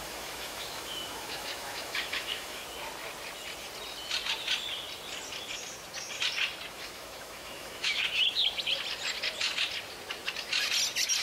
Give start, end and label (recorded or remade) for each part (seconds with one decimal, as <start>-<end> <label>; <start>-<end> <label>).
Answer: 0.0-2.6 remade; 2.6-6.7 recorded; 6.7-8.4 remade; 8.4-11.2 recorded